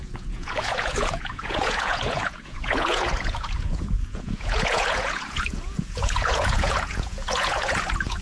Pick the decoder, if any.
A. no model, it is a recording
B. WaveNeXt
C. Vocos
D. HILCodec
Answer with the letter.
C